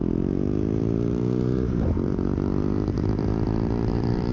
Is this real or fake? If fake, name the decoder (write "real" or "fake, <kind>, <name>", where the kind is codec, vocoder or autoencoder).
fake, vocoder, BigVGAN v2